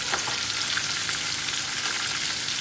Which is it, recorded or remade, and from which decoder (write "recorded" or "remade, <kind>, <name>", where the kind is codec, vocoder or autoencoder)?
recorded